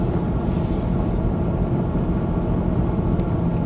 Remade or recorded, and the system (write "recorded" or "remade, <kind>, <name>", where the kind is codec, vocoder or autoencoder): recorded